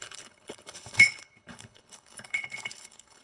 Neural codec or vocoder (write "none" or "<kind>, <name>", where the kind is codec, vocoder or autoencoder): codec, HILCodec